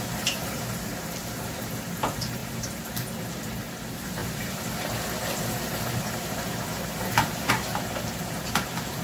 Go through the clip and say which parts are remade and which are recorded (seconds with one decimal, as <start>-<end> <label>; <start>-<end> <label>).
0.0-9.0 remade